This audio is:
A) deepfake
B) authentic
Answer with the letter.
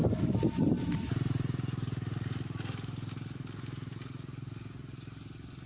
B